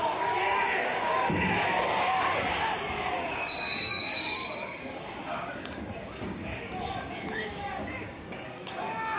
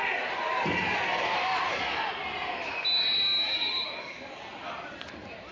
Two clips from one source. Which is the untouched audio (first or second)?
second